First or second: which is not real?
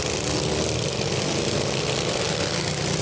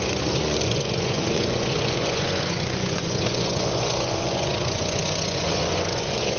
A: second